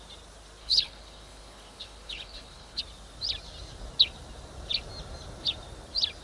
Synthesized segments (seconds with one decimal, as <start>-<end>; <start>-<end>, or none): 0.6-2.8